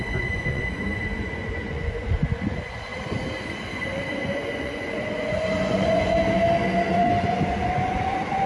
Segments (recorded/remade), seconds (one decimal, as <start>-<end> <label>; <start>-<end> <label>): 0.0-2.9 remade; 2.9-3.5 recorded; 3.5-6.2 remade; 6.2-6.9 recorded; 6.9-8.5 remade